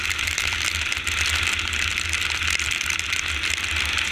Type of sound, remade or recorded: recorded